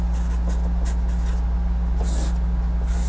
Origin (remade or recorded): recorded